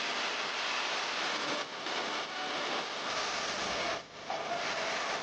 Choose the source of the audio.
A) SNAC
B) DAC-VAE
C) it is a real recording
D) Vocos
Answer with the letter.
C